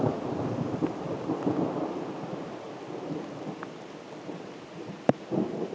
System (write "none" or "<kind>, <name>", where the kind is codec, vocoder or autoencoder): none